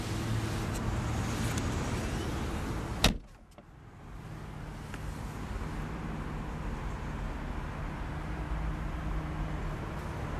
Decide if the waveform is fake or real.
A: real